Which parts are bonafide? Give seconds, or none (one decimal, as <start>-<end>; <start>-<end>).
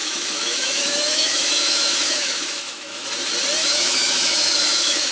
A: 3.1-3.6